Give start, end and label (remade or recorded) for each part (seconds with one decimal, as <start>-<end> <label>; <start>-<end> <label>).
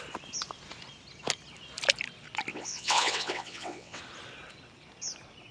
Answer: 0.0-2.5 recorded; 2.5-4.0 remade; 4.0-5.5 recorded